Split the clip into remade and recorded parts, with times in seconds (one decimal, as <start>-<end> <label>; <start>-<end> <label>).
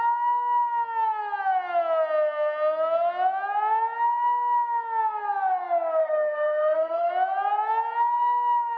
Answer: 0.0-6.0 recorded; 6.0-7.1 remade; 7.1-8.8 recorded